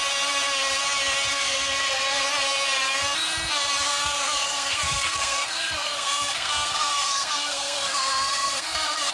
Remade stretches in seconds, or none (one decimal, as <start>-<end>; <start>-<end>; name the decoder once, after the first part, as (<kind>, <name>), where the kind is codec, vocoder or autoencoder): 1.3-2.2 (codec, SNAC); 3.9-9.1